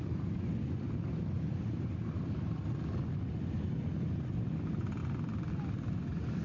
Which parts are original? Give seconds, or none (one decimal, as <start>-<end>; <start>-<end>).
5.0-5.5